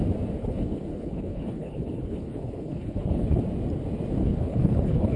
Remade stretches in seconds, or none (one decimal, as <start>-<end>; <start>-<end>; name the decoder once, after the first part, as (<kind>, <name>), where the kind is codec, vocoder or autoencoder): 0.4-3.4 (codec, HILCodec); 4.2-5.2